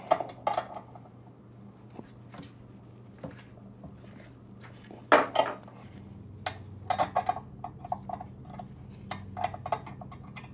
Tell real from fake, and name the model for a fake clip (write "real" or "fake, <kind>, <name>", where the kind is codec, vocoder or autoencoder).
real